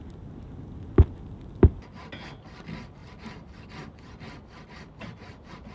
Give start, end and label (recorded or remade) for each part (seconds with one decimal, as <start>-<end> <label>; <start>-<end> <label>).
0.0-5.7 recorded